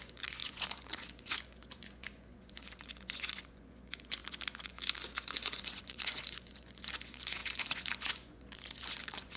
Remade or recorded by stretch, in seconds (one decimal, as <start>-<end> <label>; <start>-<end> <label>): 0.0-9.4 remade